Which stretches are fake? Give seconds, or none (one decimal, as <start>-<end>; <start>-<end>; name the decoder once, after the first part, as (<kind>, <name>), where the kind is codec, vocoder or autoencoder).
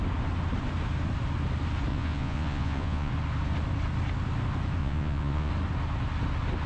1.9-3.1 (vocoder, Vocos); 4.8-5.5